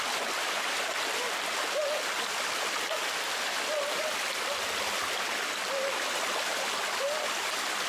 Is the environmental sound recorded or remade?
recorded